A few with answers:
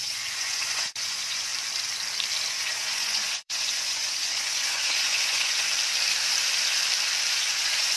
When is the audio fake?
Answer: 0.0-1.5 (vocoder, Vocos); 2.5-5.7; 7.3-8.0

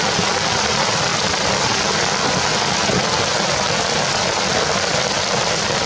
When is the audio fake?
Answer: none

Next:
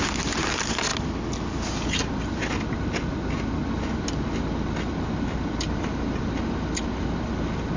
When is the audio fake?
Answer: none

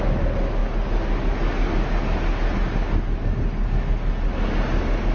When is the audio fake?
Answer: none

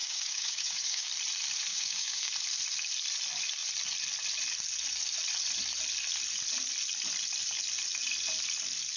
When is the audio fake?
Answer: 0.0-1.1 (codec, DAC); 1.7-2.3

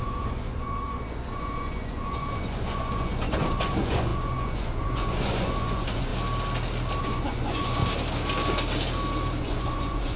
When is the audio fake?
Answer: 0.0-6.1 (vocoder, Vocos); 7.0-7.8; 9.4-10.2

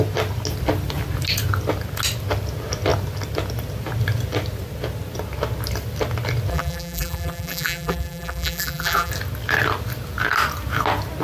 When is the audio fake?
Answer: 6.5-9.1 (vocoder, BigVGAN v2)

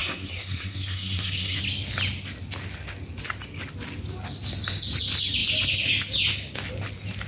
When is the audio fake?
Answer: 0.0-1.6 (codec, SNAC)